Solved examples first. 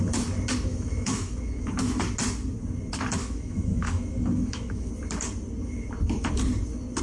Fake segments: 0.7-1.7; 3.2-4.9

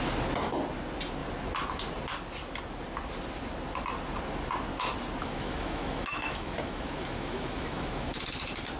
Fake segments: 5.2-8.1